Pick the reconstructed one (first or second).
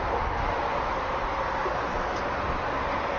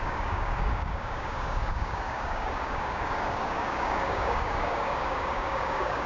second